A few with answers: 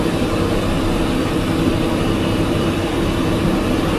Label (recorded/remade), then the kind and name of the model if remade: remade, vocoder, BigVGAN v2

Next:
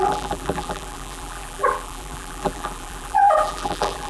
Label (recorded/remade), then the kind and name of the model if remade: remade, vocoder, BigVGAN v2